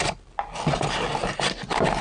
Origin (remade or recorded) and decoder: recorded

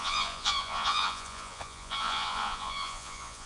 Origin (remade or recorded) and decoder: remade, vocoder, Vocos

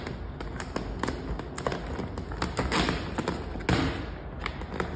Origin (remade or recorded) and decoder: recorded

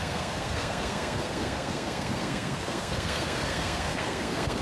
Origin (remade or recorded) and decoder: remade, codec, SNAC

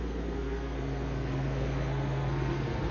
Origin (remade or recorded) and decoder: remade, codec, SNAC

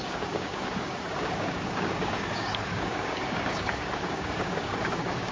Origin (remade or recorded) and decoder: remade, codec, DAC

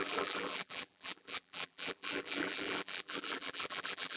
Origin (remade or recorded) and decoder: remade, vocoder, BigVGAN v2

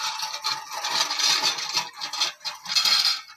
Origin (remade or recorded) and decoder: recorded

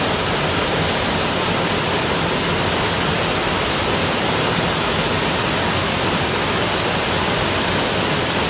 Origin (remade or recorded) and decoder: recorded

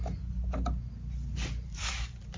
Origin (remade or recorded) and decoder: recorded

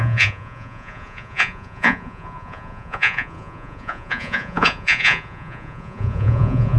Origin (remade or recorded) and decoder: remade, vocoder, Vocos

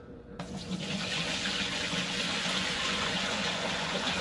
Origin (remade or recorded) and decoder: remade, vocoder, Vocos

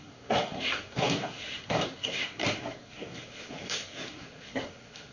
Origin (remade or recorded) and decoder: remade, codec, SNAC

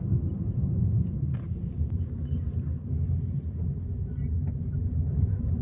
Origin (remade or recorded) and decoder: recorded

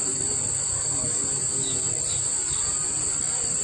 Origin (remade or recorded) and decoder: recorded